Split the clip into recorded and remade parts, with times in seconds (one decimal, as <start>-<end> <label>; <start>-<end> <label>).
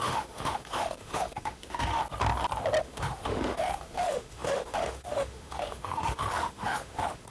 0.0-2.0 remade; 2.0-2.8 recorded; 2.8-7.3 remade